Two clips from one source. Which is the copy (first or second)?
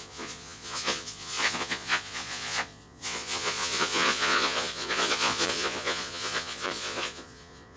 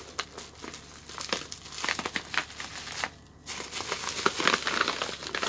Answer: first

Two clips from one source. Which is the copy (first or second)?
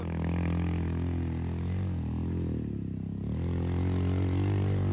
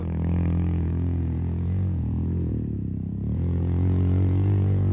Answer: second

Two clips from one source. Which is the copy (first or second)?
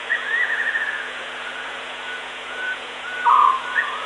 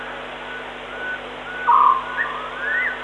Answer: first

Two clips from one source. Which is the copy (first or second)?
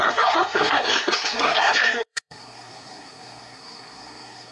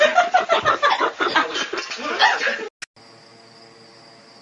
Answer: first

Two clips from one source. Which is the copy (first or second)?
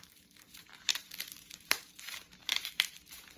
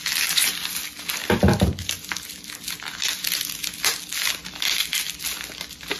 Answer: first